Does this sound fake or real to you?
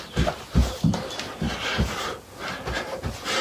real